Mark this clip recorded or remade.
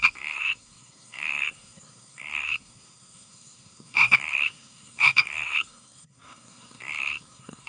remade